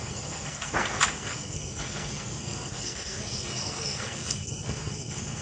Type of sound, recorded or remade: remade